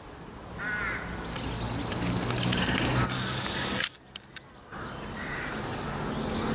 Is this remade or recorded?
recorded